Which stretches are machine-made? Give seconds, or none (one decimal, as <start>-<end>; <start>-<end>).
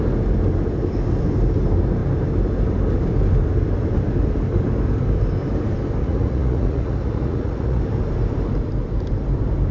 6.0-7.8